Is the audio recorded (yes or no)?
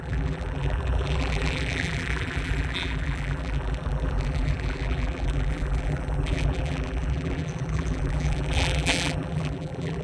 no